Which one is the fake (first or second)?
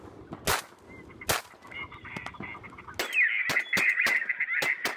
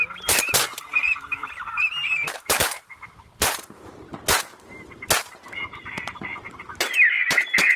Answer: second